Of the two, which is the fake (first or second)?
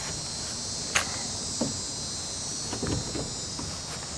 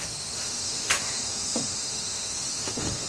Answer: second